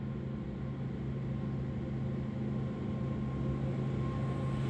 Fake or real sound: real